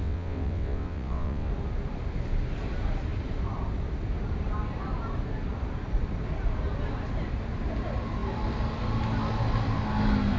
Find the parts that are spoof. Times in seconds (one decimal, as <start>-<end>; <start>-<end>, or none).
0.0-1.5